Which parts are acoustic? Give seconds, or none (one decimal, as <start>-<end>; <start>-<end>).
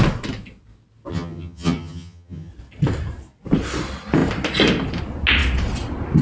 0.0-1.1; 2.5-6.2